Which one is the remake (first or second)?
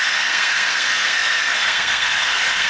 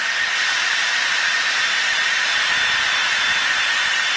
first